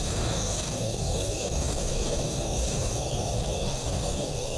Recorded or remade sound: remade